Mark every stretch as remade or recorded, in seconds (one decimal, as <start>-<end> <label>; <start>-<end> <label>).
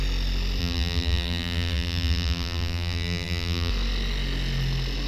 0.0-0.6 recorded; 0.6-3.7 remade; 3.7-5.1 recorded